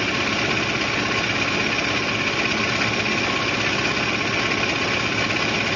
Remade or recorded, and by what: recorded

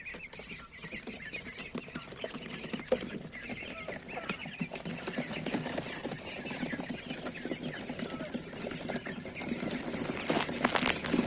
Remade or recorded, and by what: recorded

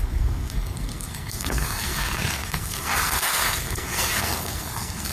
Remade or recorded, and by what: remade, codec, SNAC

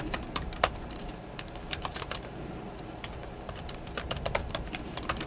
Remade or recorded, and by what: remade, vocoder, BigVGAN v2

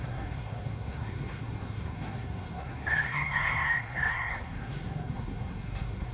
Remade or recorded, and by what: remade, codec, SNAC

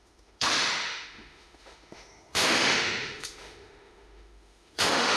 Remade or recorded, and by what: remade, autoencoder, DAC-VAE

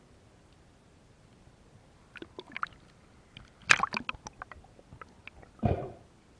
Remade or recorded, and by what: recorded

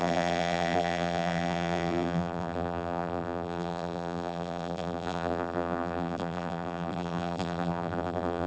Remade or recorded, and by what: remade, vocoder, BigVGAN v2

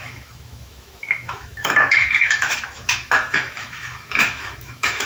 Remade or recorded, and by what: remade, autoencoder, DAC-VAE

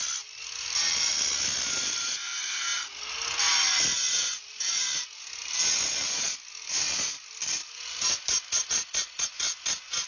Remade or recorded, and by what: recorded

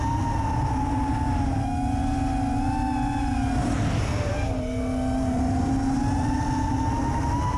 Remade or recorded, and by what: recorded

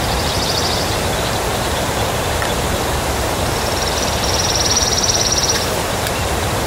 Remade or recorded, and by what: remade, vocoder, BigVGAN v2